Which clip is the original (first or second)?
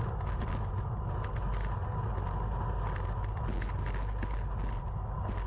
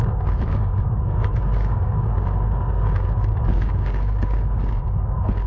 first